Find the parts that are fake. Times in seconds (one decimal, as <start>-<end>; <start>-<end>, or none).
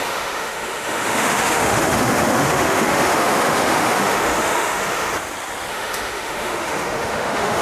0.0-5.1; 5.7-7.6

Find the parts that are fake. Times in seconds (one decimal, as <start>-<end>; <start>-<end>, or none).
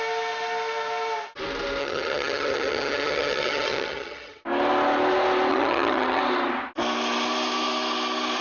1.8-4.4; 5.5-6.2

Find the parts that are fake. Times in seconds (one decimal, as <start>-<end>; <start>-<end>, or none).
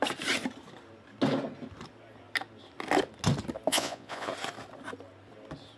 3.7-4.3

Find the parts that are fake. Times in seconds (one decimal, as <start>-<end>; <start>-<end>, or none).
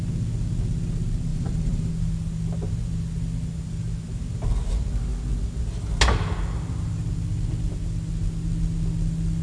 1.3-1.9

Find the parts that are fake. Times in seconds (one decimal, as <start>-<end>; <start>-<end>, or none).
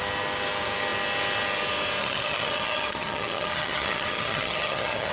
2.0-5.1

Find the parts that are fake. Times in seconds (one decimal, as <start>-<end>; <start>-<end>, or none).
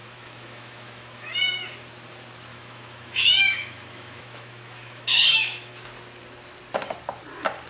0.0-1.4; 2.5-5.7